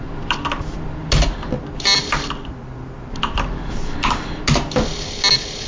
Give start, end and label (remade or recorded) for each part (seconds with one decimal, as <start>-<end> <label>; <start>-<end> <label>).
0.0-5.7 recorded